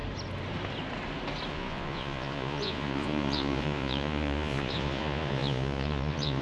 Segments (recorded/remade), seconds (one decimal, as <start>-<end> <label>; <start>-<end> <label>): 0.0-1.5 recorded; 1.5-6.4 remade

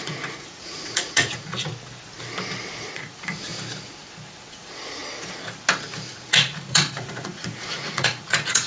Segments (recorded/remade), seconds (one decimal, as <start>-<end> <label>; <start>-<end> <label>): 0.0-1.7 remade; 1.7-2.7 recorded; 2.7-3.5 remade; 3.5-4.5 recorded; 4.5-5.0 remade; 5.0-6.1 recorded; 6.1-8.7 remade